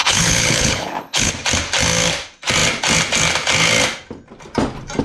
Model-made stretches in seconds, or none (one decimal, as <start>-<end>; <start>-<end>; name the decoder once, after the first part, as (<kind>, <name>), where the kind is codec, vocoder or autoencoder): 0.0-1.3 (codec, HILCodec)